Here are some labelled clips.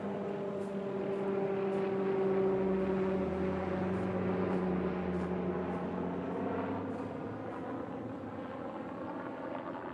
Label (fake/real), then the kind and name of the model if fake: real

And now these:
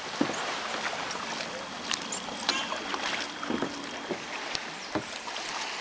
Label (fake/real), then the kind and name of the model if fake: real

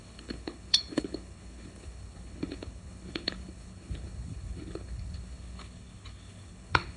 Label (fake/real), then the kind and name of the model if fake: fake, codec, HILCodec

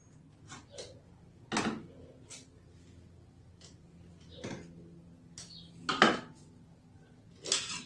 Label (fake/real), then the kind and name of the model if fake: real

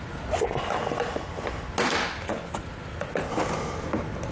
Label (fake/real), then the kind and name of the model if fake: real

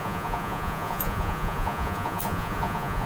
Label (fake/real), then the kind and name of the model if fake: fake, vocoder, Vocos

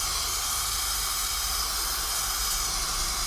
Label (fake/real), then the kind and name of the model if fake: real